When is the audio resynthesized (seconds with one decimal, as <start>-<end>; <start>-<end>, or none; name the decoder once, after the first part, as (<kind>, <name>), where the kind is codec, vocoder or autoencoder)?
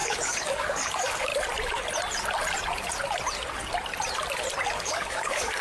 0.0-1.3 (codec, DAC); 4.7-5.6